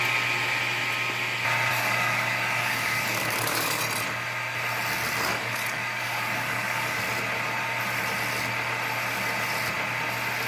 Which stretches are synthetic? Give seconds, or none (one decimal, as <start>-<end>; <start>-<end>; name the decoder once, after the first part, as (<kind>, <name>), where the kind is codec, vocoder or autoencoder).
1.7-3.8 (codec, DAC); 5.3-7.0